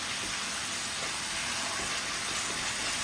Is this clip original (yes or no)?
yes